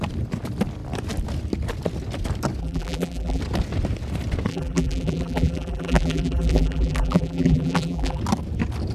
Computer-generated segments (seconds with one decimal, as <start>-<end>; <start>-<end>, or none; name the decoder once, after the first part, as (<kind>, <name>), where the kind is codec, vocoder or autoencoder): 2.6-3.4 (vocoder, BigVGAN v2); 4.5-8.2